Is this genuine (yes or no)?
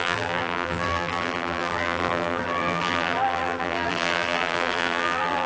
no